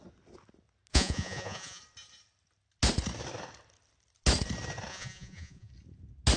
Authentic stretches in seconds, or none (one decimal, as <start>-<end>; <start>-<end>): 0.0-0.9; 1.8-4.9; 5.7-6.4